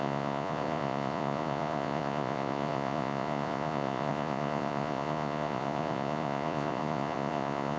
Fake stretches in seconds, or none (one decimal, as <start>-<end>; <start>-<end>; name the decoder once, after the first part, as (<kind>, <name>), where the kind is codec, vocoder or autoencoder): 0.0-7.8 (vocoder, Vocos)